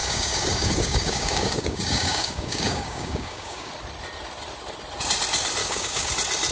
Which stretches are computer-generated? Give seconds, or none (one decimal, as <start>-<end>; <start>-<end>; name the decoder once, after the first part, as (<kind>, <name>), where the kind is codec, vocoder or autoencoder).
0.0-3.7 (codec, DAC); 5.6-6.1

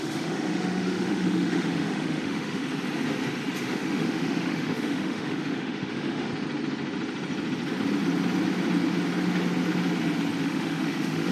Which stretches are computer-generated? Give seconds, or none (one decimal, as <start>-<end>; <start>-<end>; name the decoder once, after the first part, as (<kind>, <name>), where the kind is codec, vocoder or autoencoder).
0.0-2.6 (autoencoder, DAC-VAE); 3.6-6.3; 10.4-11.3

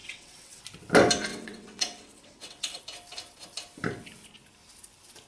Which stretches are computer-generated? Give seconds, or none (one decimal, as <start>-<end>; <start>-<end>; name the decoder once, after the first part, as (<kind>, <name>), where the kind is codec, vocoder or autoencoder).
0.0-0.6 (vocoder, WaveNeXt); 1.3-2.8

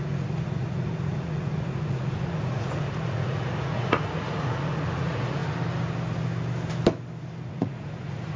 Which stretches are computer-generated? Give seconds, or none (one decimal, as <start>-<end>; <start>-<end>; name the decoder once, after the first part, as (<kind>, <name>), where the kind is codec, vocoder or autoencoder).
0.0-5.4 (vocoder, Vocos); 7.5-8.4

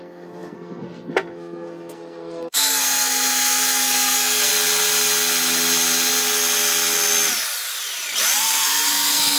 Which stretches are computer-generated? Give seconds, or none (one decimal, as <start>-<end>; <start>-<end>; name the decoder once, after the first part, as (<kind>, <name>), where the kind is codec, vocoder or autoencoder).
0.0-4.5 (codec, SNAC); 8.4-9.4

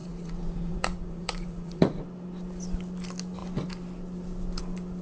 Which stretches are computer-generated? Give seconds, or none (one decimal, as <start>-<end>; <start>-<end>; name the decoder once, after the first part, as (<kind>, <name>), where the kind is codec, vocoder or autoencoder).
0.0-2.0 (vocoder, Vocos)

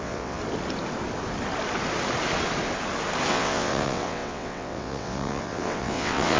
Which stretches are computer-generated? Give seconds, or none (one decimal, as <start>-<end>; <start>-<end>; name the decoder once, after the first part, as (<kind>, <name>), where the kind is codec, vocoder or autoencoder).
0.0-0.4 (vocoder, WaveNeXt); 3.3-6.4